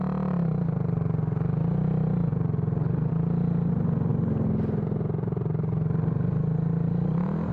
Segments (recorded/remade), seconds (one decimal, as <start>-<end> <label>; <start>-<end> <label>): 0.0-7.5 recorded